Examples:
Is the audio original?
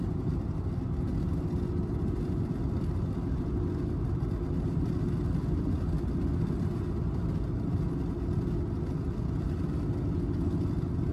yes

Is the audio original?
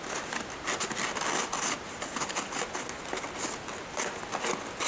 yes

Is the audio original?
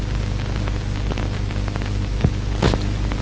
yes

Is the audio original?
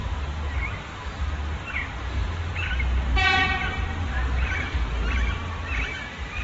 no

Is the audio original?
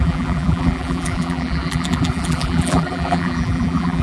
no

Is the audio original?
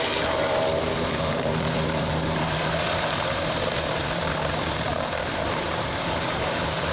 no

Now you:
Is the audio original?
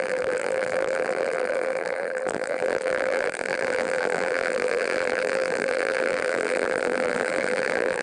no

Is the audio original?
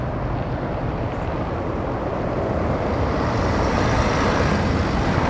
yes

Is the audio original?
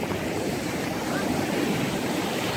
no